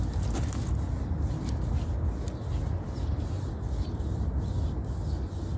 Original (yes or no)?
yes